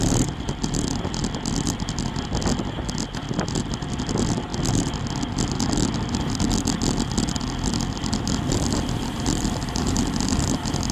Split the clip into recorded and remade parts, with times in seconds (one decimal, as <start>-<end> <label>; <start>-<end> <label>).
0.0-1.2 remade; 1.2-3.6 recorded; 3.6-4.5 remade; 4.5-7.8 recorded; 7.8-10.9 remade